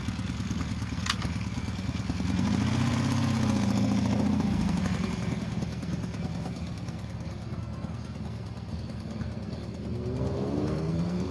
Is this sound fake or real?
fake